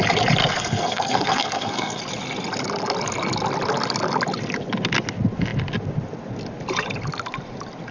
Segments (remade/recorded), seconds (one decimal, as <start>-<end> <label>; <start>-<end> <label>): 0.0-0.4 recorded; 0.4-2.0 remade; 2.0-7.9 recorded